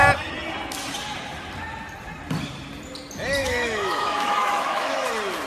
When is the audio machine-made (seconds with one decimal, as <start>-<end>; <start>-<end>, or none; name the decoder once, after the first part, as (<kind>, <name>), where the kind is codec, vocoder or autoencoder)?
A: 3.4-5.1 (autoencoder, DAC-VAE)